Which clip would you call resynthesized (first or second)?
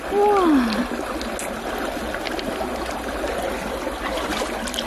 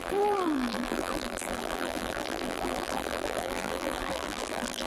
second